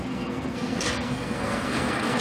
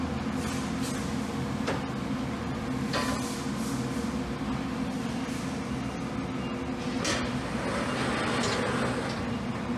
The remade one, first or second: first